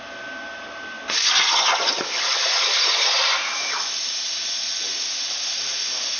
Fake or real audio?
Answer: real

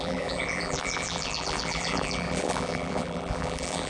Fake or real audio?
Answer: fake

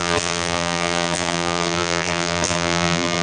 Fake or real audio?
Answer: fake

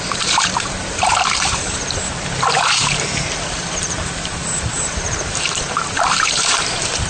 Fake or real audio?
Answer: fake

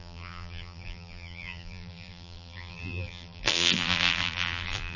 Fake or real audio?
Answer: fake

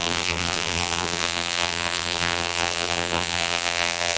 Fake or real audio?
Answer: fake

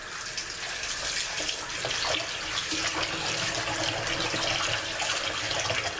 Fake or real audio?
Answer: real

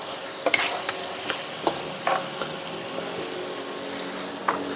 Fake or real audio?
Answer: real